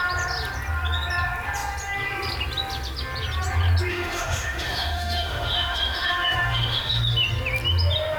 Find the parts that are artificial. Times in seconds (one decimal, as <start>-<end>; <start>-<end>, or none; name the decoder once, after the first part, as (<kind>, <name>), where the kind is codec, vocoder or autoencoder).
3.9-7.0 (autoencoder, DAC-VAE)